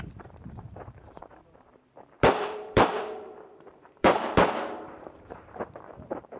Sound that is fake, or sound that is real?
fake